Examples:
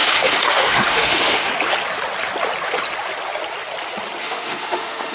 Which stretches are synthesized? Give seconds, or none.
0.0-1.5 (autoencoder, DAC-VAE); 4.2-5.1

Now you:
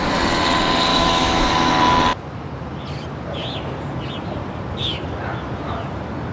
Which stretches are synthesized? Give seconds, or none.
0.9-1.7 (autoencoder, DAC-VAE)

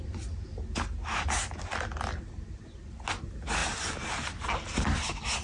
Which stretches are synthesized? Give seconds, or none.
none